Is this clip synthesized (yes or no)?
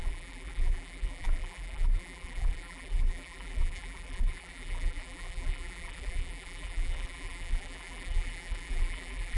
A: yes